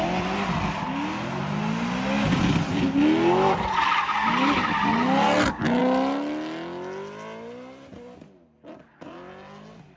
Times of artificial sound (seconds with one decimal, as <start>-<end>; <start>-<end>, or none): none